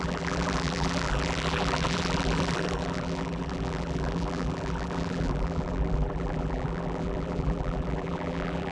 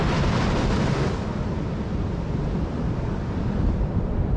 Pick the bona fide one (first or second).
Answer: second